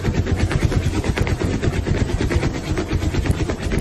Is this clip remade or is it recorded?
recorded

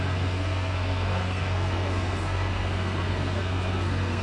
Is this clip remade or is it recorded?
remade